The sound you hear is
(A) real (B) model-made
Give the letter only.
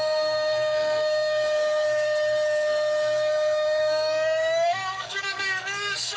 B